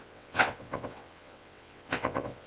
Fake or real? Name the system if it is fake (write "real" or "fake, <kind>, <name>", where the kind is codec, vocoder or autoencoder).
fake, vocoder, WaveNeXt